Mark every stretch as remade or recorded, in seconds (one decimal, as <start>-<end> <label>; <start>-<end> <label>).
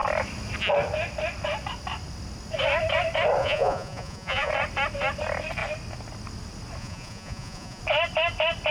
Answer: 0.0-3.4 recorded; 3.4-4.5 remade; 4.5-6.8 recorded; 6.8-7.8 remade; 7.8-8.7 recorded